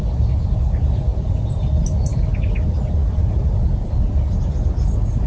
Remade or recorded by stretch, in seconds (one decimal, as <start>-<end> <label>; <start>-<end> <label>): 0.0-5.3 recorded